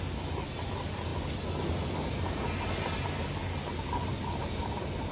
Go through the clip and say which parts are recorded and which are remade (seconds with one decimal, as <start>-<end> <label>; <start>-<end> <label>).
0.0-5.1 recorded